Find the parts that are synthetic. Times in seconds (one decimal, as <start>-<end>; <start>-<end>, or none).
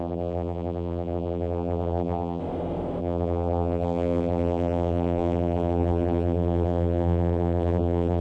0.0-2.4; 3.0-8.2